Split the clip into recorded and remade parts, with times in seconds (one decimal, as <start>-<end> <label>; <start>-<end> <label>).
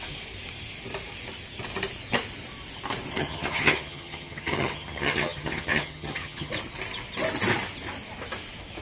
0.0-3.1 recorded; 3.1-6.5 remade; 6.5-8.8 recorded